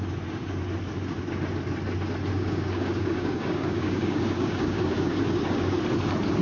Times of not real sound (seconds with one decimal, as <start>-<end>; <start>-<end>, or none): 2.3-5.8

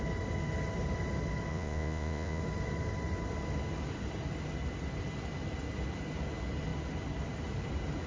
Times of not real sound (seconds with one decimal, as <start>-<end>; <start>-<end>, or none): 1.5-2.4

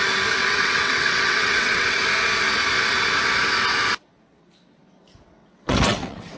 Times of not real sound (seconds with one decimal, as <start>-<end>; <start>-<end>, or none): 0.4-2.0; 5.4-6.4